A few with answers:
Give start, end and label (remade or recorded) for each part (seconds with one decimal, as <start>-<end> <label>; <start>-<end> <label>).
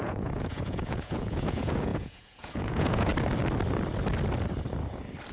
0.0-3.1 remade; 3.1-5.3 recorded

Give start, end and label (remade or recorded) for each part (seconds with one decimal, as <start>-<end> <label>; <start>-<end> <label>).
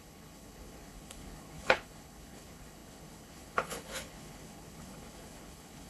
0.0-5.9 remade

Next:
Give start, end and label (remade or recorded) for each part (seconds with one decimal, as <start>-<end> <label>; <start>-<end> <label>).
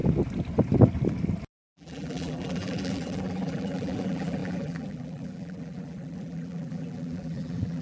0.0-1.6 recorded; 1.6-7.8 remade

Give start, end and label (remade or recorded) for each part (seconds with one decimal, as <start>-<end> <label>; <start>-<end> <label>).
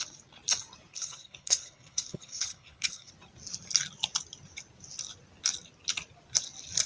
0.0-0.9 recorded; 0.9-3.1 remade; 3.1-6.9 recorded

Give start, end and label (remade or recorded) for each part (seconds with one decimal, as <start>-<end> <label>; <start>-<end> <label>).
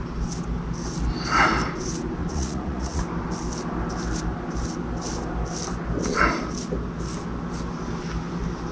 0.0-2.2 recorded; 2.2-3.0 remade; 3.0-8.7 recorded